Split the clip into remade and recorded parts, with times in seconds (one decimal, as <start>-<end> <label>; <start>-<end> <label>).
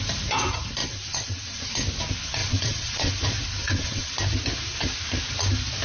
0.0-0.8 recorded; 0.8-1.7 remade; 1.7-2.4 recorded; 2.4-3.1 remade; 3.1-3.6 recorded; 3.6-4.1 remade; 4.1-5.8 recorded